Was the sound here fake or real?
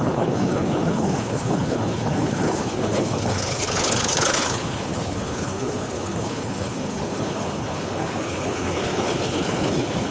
fake